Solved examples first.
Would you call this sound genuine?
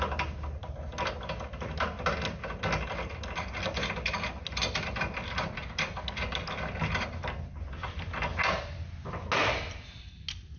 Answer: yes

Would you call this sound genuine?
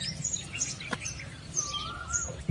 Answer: yes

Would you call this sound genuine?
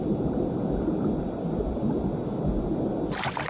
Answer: no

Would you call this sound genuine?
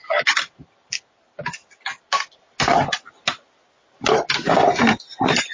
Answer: yes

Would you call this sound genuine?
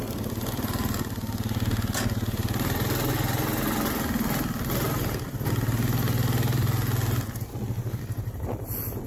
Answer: yes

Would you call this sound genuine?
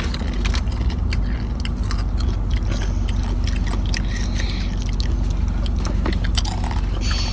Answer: yes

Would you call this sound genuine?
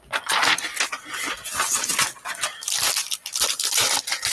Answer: yes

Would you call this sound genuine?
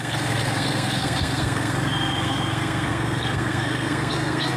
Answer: no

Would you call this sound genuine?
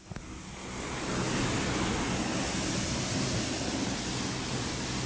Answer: yes